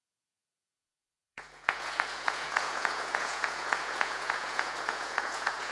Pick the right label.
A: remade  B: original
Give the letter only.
A